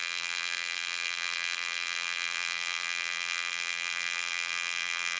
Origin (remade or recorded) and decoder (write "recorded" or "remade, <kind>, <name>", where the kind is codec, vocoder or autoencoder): remade, vocoder, BigVGAN v2